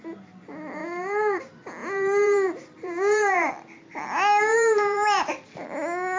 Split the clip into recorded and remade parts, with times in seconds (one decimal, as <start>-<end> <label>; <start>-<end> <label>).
0.0-0.8 recorded; 0.8-1.4 remade; 1.4-1.8 recorded; 1.8-3.5 remade; 3.5-4.5 recorded; 4.5-5.2 remade; 5.2-6.2 recorded